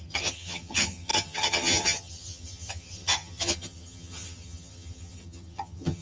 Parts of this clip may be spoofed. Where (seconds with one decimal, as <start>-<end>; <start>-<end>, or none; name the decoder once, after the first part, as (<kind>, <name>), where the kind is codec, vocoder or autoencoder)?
0.0-6.0 (vocoder, HiFi-GAN)